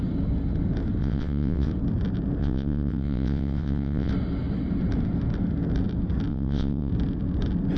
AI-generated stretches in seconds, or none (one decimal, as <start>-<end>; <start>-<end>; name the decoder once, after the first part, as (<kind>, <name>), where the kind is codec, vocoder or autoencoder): 1.0-1.7 (vocoder, WaveNeXt); 2.4-4.1; 6.3-6.9